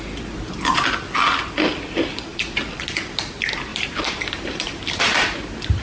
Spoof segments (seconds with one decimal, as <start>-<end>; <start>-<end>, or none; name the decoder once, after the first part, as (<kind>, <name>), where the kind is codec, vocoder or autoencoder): 3.7-5.2 (vocoder, BigVGAN v2)